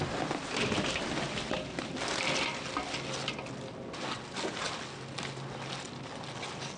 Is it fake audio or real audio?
real